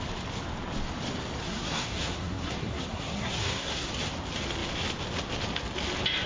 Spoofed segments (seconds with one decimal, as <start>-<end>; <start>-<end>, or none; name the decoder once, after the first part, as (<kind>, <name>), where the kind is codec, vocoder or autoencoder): 1.4-3.9 (codec, SNAC)